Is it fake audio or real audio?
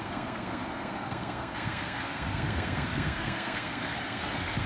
fake